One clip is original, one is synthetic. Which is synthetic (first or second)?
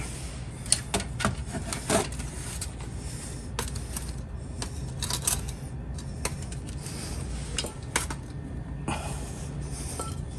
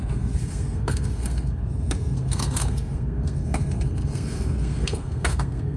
second